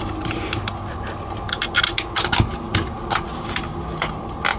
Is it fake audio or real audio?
real